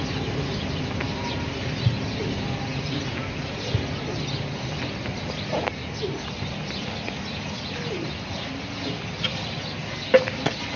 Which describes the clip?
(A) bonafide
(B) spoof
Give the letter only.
A